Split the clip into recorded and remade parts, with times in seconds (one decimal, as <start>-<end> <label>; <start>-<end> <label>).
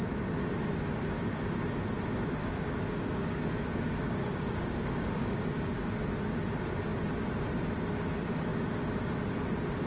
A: 0.0-2.4 recorded; 2.4-6.0 remade; 6.0-9.9 recorded